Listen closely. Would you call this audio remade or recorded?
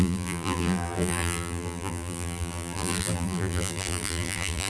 remade